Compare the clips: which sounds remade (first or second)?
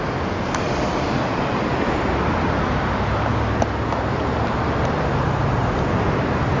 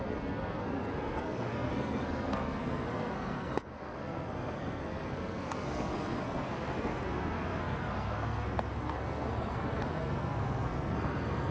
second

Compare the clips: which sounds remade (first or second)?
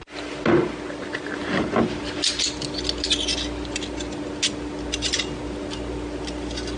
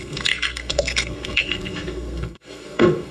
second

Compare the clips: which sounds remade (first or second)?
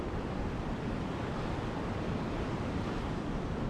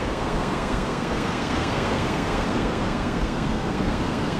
second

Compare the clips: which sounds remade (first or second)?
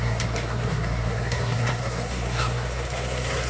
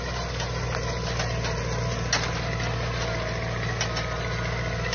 first